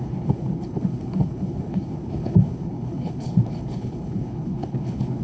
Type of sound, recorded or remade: remade